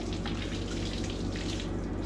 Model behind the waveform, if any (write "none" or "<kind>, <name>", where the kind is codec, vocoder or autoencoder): none